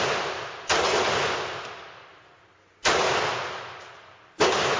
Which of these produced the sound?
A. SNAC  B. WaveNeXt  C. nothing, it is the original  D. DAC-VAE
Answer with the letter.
C